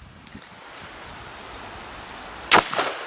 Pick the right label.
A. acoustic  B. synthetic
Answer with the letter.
A